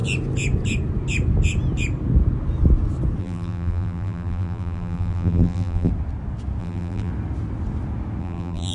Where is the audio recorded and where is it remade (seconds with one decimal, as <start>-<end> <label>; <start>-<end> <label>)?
0.0-3.2 recorded; 3.2-5.9 remade; 5.9-6.6 recorded; 6.6-7.1 remade; 7.1-8.2 recorded; 8.2-8.7 remade